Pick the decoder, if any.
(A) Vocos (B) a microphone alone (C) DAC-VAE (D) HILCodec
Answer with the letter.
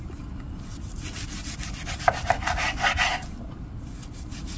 B